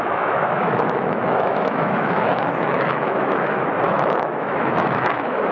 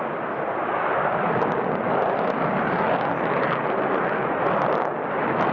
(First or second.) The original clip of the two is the second